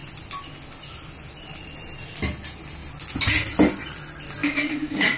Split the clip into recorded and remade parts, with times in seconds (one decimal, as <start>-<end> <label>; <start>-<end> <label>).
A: 0.0-4.4 recorded; 4.4-5.2 remade